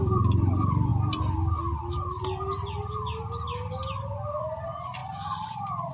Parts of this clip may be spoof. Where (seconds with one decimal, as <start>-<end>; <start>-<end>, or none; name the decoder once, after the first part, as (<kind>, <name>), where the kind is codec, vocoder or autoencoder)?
0.0-0.9 (vocoder, BigVGAN v2); 4.4-5.9

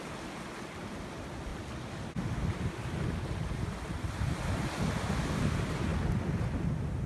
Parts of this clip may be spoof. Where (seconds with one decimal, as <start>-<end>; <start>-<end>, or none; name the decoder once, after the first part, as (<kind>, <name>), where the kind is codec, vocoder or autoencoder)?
none

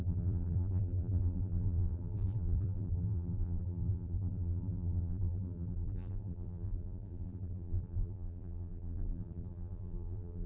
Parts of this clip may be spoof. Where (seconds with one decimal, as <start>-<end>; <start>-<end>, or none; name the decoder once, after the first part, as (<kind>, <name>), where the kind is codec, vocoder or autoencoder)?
0.0-10.5 (vocoder, BigVGAN v2)

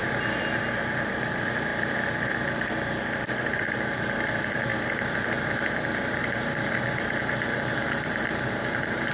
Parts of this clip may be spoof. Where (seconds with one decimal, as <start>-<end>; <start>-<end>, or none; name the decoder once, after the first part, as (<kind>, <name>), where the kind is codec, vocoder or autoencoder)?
0.0-9.1 (vocoder, BigVGAN v2)

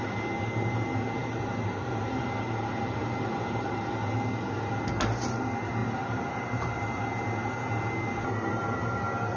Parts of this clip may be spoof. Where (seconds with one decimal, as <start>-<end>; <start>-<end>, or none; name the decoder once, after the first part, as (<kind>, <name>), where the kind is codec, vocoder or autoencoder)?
1.2-2.2 (vocoder, BigVGAN v2); 3.0-3.7; 5.8-7.0

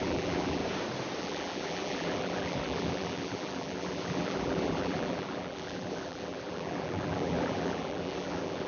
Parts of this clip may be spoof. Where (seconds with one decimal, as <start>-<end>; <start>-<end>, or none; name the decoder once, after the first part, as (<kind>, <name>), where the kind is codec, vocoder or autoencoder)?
0.0-0.6 (vocoder, BigVGAN v2); 1.2-8.7